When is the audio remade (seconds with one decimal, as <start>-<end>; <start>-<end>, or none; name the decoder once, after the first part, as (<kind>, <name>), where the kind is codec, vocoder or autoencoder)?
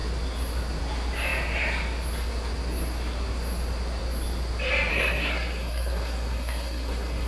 4.9-7.3 (codec, SNAC)